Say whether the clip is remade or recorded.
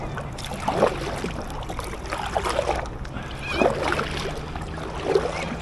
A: recorded